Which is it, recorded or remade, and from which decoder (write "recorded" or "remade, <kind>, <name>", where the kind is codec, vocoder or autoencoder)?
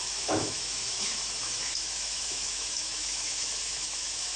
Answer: remade, autoencoder, DAC-VAE